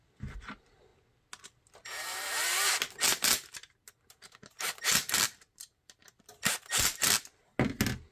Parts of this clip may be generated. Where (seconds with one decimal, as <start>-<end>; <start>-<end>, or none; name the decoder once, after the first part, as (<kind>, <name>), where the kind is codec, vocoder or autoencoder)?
none